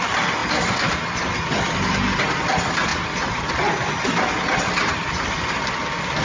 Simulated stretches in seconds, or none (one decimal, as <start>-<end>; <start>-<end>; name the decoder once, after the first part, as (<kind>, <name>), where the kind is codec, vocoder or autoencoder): 2.9-3.4 (vocoder, BigVGAN v2)